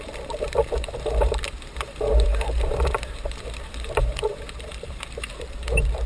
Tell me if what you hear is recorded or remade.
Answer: remade